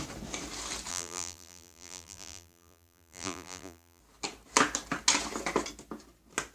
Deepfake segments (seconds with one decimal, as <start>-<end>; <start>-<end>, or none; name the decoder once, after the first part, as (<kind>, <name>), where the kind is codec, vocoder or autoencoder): 0.9-4.0 (vocoder, BigVGAN v2)